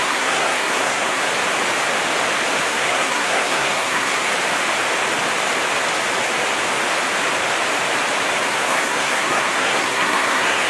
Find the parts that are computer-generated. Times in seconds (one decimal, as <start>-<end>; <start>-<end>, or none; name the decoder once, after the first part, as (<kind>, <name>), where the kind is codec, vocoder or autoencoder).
0.0-1.3 (codec, SNAC); 2.6-4.3; 8.5-10.7